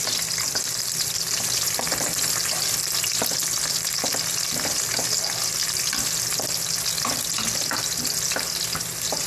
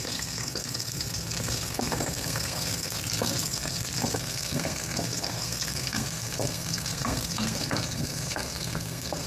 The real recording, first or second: first